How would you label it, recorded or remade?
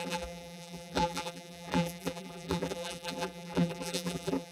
remade